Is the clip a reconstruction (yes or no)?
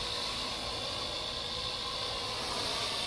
no